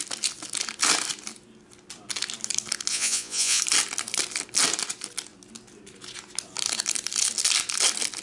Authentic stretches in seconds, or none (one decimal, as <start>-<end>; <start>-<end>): 0.0-2.9; 3.6-8.2